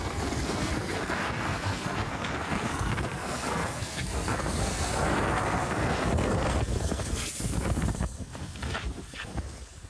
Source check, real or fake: fake